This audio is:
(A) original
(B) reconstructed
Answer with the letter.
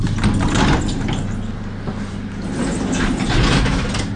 A